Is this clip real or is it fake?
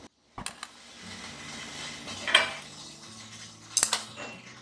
real